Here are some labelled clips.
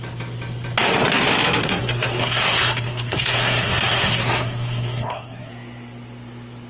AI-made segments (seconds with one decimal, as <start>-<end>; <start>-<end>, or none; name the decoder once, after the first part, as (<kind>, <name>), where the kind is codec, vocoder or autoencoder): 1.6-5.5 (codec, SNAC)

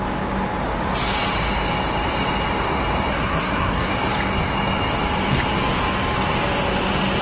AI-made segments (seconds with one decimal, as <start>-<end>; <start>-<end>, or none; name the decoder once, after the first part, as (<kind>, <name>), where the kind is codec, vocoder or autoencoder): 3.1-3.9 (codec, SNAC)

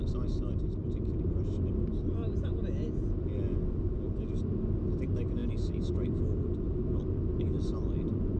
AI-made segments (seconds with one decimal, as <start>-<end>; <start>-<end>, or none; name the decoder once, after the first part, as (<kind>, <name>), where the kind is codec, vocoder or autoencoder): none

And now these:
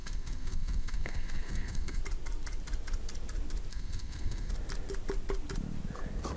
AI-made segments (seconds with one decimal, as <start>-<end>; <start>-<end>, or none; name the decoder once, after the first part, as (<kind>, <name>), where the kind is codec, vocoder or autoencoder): 0.0-2.0 (codec, SNAC); 3.7-4.5

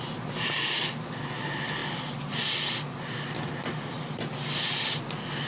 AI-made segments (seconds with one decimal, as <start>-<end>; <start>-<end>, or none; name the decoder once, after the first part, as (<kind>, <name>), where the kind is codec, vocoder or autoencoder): none

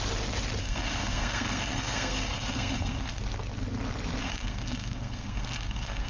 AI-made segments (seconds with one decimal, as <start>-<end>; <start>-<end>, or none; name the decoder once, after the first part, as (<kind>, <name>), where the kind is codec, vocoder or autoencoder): 0.6-3.2 (codec, SNAC); 4.2-6.1

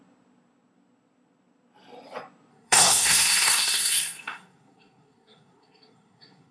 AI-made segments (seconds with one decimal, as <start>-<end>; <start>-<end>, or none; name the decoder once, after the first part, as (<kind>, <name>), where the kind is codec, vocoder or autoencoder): 2.5-6.5 (codec, SNAC)